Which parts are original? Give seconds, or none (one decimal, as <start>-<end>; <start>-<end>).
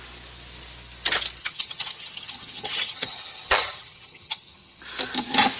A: 0.0-1.4; 4.8-5.6